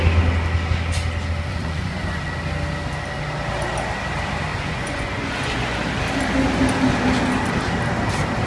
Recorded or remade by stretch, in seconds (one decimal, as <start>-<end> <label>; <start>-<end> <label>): 0.0-1.5 recorded; 1.5-2.3 remade; 2.3-4.5 recorded; 4.5-5.8 remade; 5.8-8.5 recorded